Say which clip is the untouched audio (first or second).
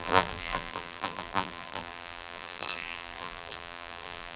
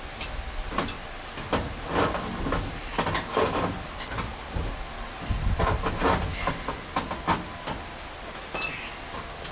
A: second